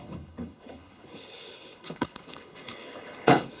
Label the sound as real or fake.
fake